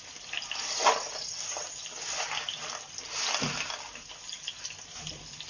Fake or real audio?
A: real